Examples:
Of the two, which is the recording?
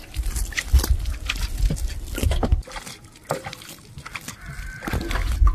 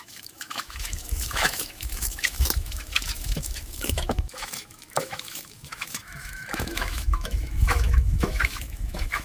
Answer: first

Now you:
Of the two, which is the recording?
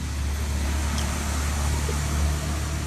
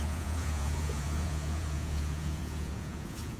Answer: first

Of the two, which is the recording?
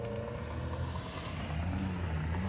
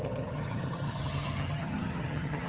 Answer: first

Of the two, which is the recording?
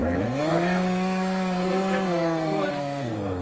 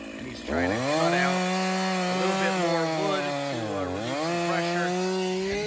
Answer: second